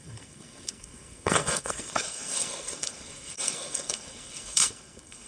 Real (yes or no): no